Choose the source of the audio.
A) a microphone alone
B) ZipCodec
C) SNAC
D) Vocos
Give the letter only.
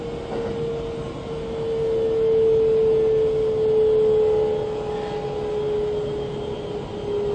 A